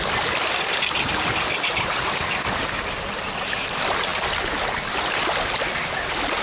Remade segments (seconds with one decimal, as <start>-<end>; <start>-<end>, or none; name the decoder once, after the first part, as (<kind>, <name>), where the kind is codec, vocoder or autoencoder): none